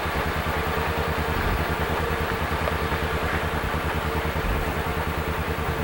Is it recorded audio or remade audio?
recorded